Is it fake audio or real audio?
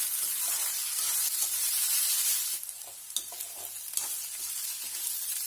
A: real